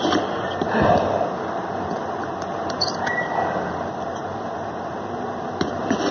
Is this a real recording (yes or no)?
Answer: no